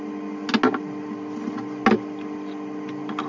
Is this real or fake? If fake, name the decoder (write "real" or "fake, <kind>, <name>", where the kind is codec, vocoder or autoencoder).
real